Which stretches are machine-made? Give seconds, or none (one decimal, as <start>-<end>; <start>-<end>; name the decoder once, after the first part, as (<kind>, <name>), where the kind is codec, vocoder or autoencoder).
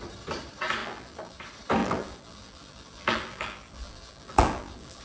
0.8-1.4 (vocoder, BigVGAN v2); 1.8-5.0